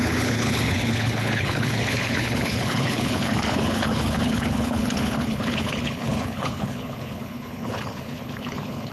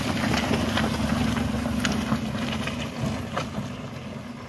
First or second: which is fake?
first